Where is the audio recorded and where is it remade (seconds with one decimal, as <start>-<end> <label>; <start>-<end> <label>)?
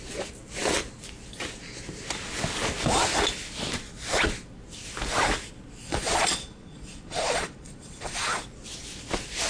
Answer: 0.0-5.8 recorded; 5.8-8.4 remade; 8.4-9.5 recorded